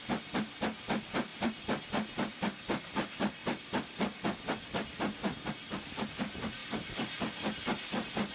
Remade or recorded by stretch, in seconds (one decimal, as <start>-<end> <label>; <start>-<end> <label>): 0.0-1.3 recorded; 1.3-1.9 remade; 1.9-3.4 recorded; 3.4-6.1 remade; 6.1-6.6 recorded; 6.6-7.6 remade; 7.6-8.3 recorded